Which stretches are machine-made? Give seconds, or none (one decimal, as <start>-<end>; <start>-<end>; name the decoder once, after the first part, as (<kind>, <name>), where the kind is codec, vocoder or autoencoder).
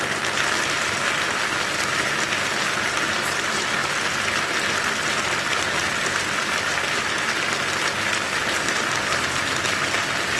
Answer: none